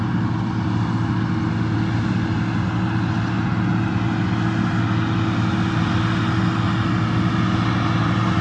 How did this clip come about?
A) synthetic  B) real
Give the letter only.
B